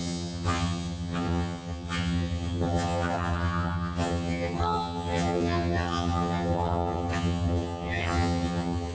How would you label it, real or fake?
fake